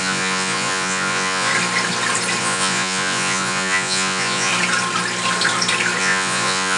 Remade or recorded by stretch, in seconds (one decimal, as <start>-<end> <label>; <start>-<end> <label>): 0.0-1.5 remade; 1.5-2.4 recorded; 2.4-4.5 remade; 4.5-6.0 recorded; 6.0-6.8 remade